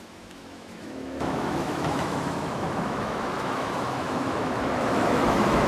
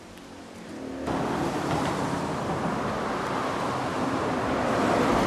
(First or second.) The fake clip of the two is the first